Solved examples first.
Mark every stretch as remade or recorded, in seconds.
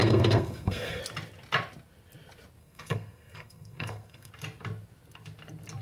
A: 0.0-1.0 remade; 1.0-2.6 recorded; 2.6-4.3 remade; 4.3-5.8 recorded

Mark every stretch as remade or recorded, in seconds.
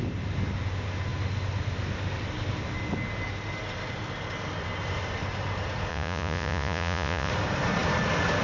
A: 0.0-5.9 recorded; 5.9-7.3 remade; 7.3-8.4 recorded